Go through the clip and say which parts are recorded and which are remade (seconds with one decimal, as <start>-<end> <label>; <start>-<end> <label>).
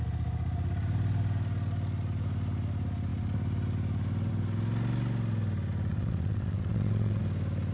0.0-5.9 recorded; 5.9-7.2 remade; 7.2-7.7 recorded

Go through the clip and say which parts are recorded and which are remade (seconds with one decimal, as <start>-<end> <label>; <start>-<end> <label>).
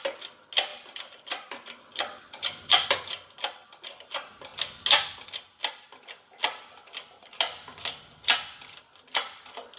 0.0-9.8 recorded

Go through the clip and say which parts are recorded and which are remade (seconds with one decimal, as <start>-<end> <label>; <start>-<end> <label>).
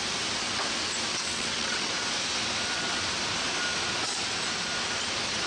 0.0-1.1 recorded; 1.1-1.9 remade; 1.9-5.5 recorded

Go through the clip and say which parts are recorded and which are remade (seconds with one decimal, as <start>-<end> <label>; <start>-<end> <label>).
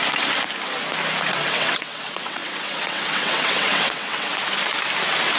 0.0-1.3 recorded; 1.3-4.3 remade; 4.3-5.4 recorded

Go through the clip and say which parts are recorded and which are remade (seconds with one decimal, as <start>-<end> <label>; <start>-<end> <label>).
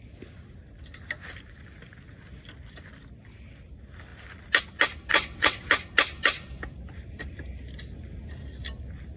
0.0-5.1 recorded; 5.1-5.7 remade; 5.7-9.2 recorded